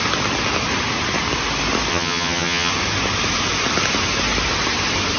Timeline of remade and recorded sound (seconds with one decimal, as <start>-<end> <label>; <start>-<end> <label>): 0.0-1.9 recorded; 1.9-2.7 remade; 2.7-5.2 recorded